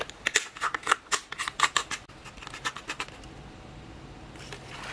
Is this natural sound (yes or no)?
yes